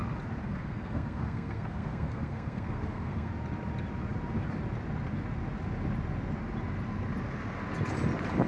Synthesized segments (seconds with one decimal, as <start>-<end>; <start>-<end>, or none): 0.4-3.3